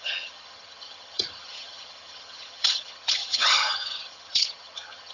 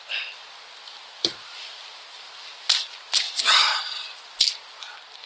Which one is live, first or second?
second